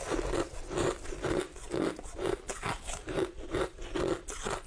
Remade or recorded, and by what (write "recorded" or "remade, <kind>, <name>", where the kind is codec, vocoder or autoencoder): recorded